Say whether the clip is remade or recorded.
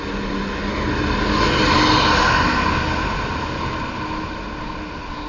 recorded